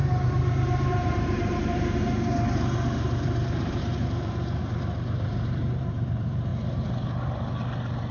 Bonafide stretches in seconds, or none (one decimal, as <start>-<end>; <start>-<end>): 6.5-8.1